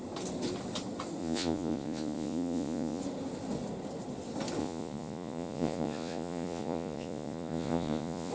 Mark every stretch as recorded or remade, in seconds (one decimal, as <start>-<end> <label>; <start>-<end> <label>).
0.0-1.2 recorded; 1.2-3.0 remade; 3.0-4.6 recorded; 4.6-8.3 remade